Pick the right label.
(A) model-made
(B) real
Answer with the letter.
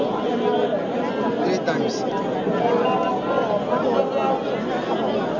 B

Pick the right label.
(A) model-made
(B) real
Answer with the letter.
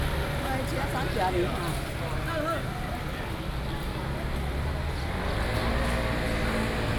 B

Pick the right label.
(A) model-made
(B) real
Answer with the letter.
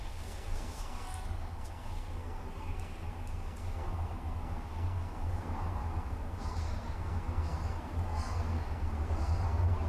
A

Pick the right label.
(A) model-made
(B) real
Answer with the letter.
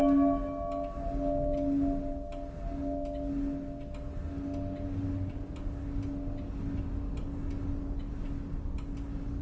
B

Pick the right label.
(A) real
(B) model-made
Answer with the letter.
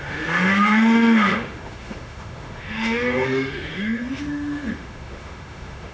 B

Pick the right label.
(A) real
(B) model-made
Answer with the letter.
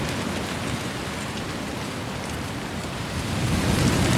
A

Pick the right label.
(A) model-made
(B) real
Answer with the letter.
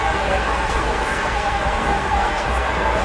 A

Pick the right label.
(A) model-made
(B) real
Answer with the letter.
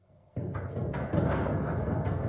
A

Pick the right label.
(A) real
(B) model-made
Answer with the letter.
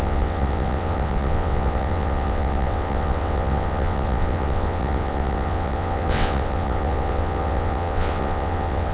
B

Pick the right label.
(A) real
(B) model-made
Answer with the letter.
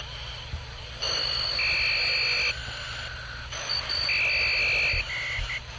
A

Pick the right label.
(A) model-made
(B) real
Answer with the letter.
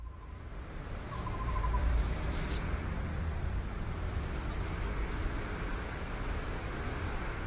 A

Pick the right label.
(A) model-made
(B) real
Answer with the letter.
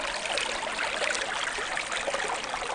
B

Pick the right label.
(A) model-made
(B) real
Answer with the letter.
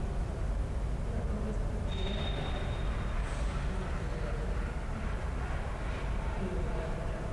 B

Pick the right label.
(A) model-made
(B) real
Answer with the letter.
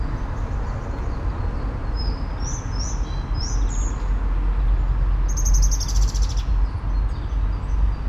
B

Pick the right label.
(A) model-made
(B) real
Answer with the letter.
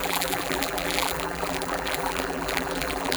A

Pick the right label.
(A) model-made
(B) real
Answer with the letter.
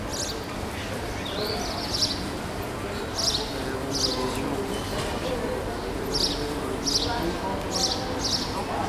B